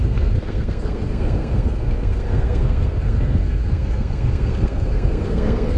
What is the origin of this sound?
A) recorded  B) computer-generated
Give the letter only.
B